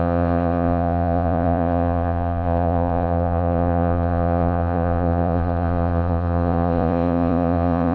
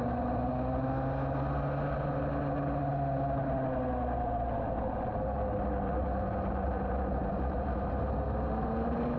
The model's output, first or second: first